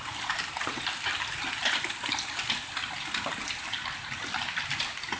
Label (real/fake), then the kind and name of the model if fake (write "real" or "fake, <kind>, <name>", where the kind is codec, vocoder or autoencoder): real